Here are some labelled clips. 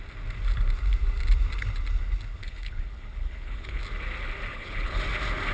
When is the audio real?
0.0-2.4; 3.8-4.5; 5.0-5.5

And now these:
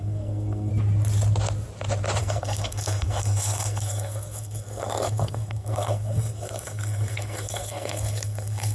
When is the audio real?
0.7-2.2

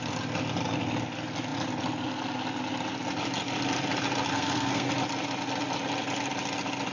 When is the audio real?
0.0-4.3; 4.9-6.9